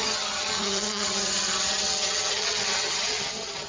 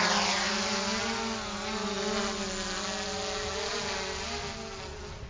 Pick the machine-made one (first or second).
first